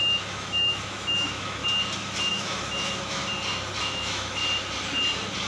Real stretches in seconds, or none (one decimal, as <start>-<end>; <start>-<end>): 1.6-2.3; 3.2-3.8; 4.4-5.5